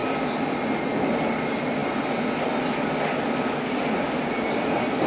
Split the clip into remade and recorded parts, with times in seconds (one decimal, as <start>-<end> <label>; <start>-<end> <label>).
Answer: 0.0-5.1 recorded